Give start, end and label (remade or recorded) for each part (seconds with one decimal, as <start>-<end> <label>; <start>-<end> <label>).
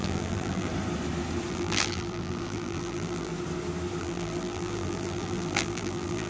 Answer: 0.0-0.7 remade; 0.7-1.5 recorded; 1.5-3.3 remade; 3.3-4.0 recorded; 4.0-6.3 remade